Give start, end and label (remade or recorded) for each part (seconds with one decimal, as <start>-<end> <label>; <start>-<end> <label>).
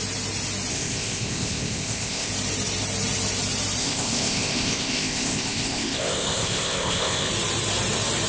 0.0-0.7 recorded; 0.7-2.3 remade; 2.3-3.8 recorded; 3.8-7.3 remade; 7.3-8.3 recorded